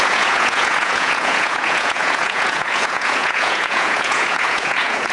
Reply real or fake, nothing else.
fake